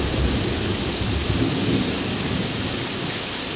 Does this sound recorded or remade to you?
recorded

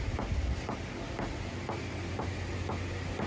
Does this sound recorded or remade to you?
recorded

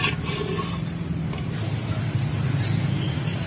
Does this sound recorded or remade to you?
recorded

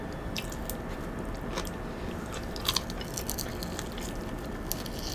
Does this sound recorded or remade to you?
recorded